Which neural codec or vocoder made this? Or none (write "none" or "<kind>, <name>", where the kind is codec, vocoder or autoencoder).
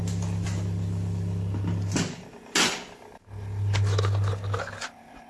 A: none